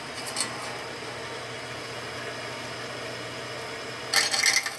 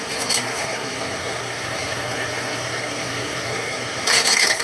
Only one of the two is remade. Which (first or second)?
second